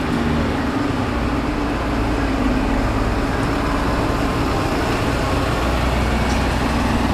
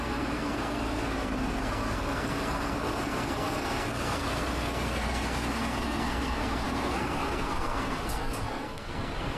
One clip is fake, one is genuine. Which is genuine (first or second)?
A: first